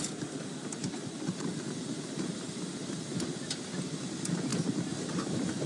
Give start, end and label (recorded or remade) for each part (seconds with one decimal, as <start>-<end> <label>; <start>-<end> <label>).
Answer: 0.0-4.5 recorded; 4.5-5.0 remade; 5.0-5.7 recorded